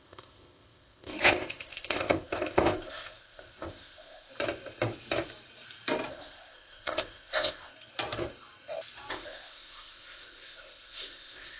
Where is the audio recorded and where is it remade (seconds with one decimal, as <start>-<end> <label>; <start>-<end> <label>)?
0.0-4.3 remade; 4.3-6.1 recorded; 6.1-7.7 remade; 7.7-9.1 recorded; 9.1-11.6 remade